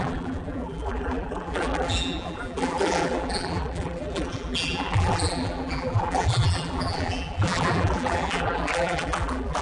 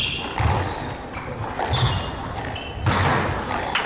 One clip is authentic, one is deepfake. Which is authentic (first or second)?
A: second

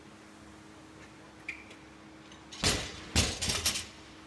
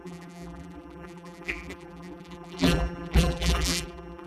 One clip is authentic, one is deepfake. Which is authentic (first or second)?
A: first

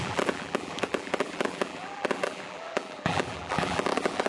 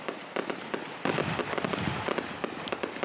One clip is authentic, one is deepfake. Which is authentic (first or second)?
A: second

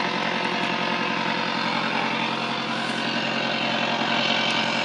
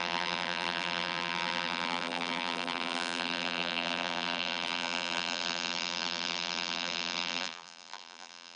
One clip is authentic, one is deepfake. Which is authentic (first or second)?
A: first